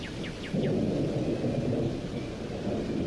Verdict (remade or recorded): recorded